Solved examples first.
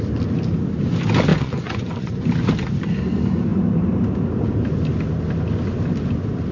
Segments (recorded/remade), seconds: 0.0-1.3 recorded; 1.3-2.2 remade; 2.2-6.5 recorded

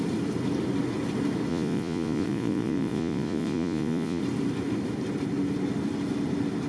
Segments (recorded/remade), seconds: 0.0-1.5 recorded; 1.5-4.2 remade; 4.2-6.7 recorded

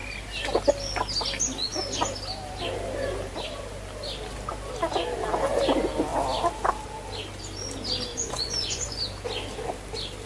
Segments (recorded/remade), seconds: 0.0-8.1 recorded; 8.1-9.0 remade; 9.0-10.3 recorded

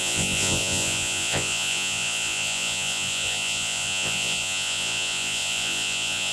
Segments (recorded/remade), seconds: 0.0-6.3 remade

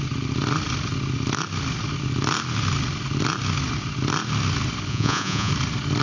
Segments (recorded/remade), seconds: 0.0-4.9 recorded; 4.9-5.5 remade; 5.5-6.0 recorded

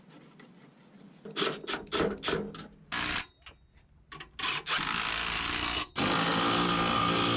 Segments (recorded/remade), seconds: 0.0-7.4 recorded

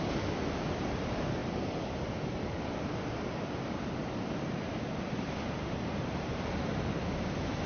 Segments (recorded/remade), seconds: 0.0-7.7 recorded